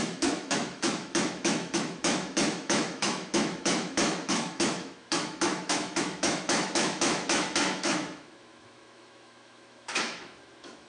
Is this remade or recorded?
remade